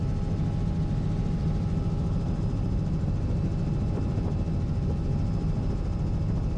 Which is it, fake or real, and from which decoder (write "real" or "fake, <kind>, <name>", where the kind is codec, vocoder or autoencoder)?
real